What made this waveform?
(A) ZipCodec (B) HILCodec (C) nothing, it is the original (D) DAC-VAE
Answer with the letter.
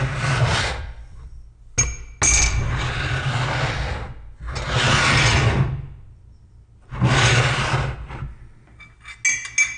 C